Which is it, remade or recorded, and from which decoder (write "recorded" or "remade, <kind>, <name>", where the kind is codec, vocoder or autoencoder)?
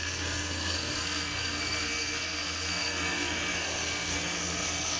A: remade, codec, SNAC